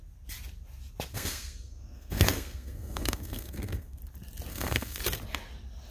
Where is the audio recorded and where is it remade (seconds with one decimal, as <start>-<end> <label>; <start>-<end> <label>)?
0.0-1.1 recorded; 1.1-4.0 remade; 4.0-4.5 recorded; 4.5-5.0 remade; 5.0-5.9 recorded